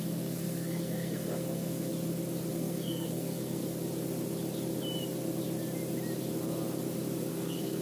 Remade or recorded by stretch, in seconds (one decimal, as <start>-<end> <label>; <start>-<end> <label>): 0.0-1.9 remade; 1.9-2.5 recorded; 2.5-3.6 remade; 3.6-7.3 recorded; 7.3-7.8 remade